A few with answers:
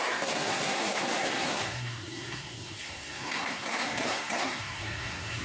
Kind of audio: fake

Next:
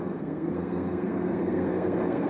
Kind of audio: fake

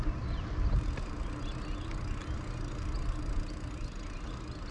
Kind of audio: real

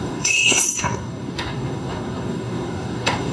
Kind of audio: fake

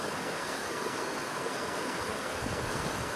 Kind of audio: fake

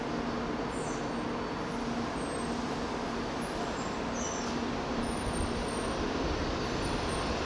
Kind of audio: real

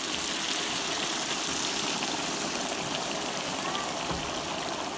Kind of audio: real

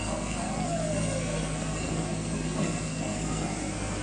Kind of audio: fake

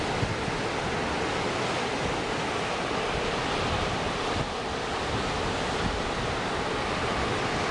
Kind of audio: real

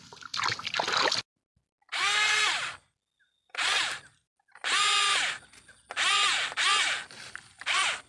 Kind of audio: real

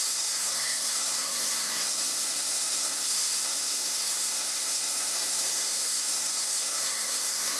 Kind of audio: fake